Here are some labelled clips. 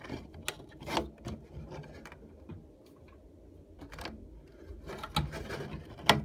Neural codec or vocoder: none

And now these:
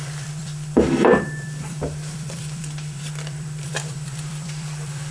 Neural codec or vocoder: vocoder, BigVGAN v2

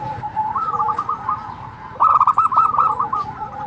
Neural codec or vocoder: vocoder, Vocos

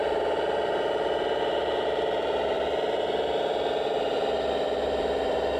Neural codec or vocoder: none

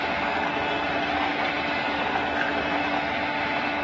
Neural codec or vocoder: vocoder, BigVGAN v2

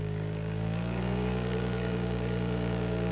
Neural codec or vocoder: codec, DAC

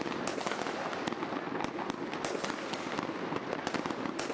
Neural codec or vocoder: none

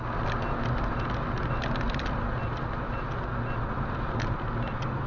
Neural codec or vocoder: none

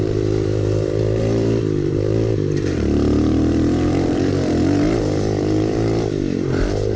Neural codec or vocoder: vocoder, BigVGAN v2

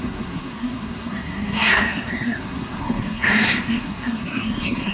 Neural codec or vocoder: codec, SNAC